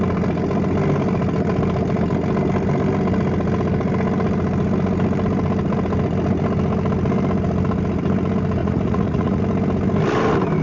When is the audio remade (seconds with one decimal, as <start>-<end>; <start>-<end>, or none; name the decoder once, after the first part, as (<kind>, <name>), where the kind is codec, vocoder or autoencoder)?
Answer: 8.6-9.4 (vocoder, Vocos)